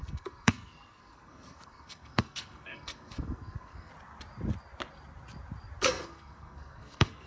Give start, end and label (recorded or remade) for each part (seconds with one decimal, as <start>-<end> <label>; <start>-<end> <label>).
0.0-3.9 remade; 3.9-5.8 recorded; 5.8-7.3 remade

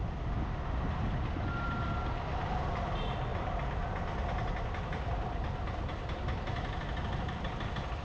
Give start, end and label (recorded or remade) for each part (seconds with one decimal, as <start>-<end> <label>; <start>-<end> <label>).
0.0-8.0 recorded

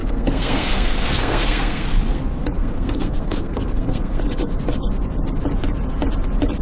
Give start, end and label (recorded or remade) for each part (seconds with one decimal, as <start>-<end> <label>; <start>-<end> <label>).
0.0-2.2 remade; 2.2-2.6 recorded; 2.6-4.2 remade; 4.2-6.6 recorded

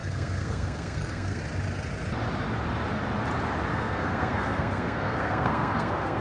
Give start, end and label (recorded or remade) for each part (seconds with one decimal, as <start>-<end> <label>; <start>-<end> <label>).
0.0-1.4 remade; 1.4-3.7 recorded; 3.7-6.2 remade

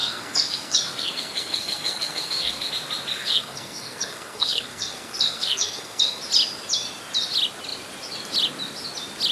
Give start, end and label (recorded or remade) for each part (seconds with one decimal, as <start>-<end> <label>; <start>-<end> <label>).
0.0-2.7 remade; 2.7-3.1 recorded; 3.1-6.2 remade; 6.2-9.3 recorded

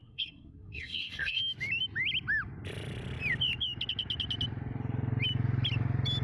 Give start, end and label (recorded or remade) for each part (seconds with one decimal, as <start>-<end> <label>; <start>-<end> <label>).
0.0-1.4 remade; 1.4-6.2 recorded